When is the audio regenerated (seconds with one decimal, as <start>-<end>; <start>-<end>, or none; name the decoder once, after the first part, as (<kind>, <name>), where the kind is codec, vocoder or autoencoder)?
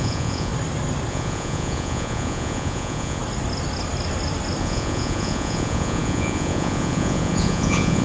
0.0-0.5 (vocoder, Vocos); 1.1-3.2; 4.6-8.0